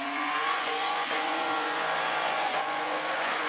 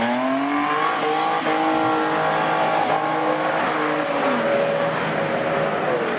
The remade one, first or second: first